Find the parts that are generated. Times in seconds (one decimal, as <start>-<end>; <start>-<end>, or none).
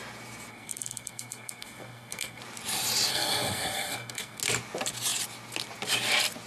0.5-2.4; 3.1-4.4